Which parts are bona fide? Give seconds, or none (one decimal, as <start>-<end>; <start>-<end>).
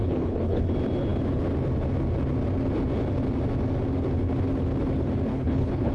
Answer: 0.7-5.3